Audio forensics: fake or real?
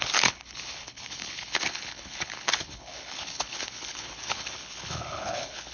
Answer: fake